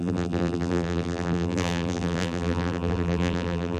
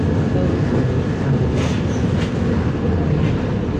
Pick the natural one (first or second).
second